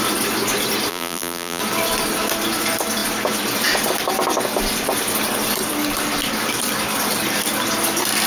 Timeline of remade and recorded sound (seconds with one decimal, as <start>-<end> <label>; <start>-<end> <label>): 0.0-0.9 recorded; 0.9-1.6 remade; 1.6-8.3 recorded